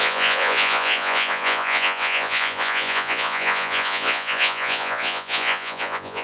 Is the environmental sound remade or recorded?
remade